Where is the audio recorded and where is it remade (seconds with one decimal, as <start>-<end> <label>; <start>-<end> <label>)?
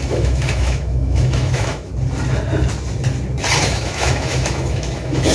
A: 0.0-1.9 remade; 1.9-3.6 recorded; 3.6-5.3 remade